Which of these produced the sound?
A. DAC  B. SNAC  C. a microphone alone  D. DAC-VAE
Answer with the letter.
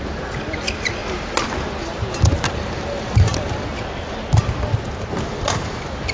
C